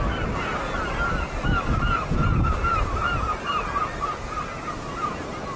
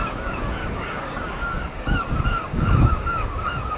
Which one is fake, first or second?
second